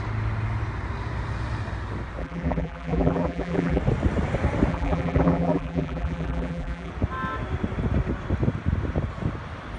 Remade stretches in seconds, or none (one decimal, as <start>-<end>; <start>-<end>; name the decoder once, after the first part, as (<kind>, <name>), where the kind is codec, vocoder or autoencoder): 2.2-3.8 (vocoder, BigVGAN v2); 4.7-6.9